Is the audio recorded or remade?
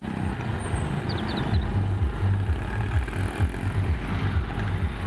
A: recorded